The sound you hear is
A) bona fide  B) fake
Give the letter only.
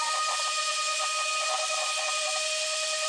A